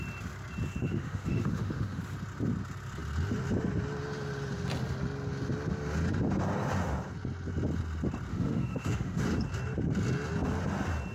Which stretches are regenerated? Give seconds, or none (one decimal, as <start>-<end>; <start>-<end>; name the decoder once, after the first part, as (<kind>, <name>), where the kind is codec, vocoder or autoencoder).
0.8-2.0 (autoencoder, DAC-VAE); 8.3-9.2